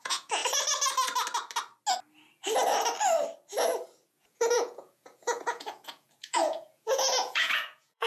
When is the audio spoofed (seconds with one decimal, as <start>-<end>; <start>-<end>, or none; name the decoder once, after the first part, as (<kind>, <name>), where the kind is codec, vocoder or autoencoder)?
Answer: 0.0-0.4 (vocoder, Vocos); 4.1-8.1